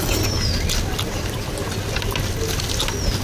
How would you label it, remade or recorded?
recorded